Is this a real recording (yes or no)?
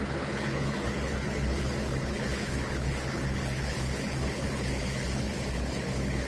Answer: no